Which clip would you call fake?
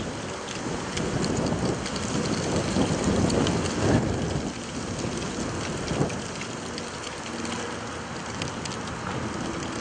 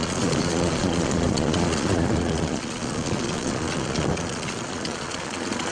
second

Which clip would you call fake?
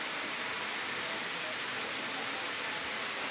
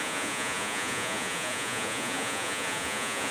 second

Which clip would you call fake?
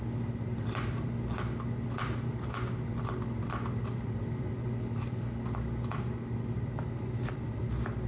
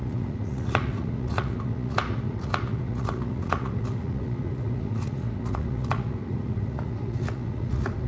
second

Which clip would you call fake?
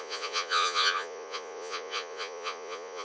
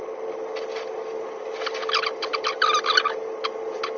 first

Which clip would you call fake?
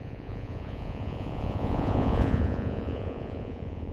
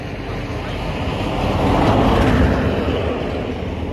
first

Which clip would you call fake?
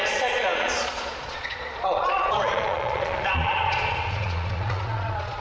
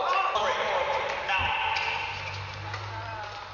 first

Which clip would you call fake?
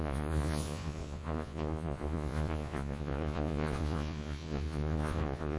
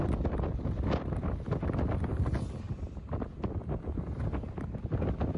first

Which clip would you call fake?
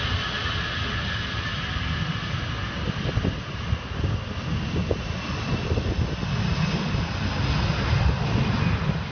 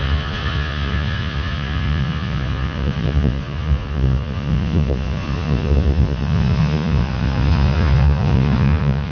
second